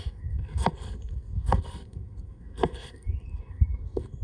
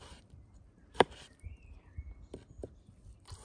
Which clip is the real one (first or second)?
second